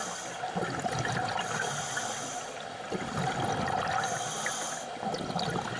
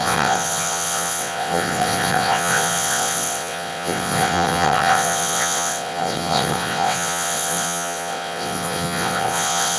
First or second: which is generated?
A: second